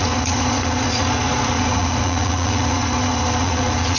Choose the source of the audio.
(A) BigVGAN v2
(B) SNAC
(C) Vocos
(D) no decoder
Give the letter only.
C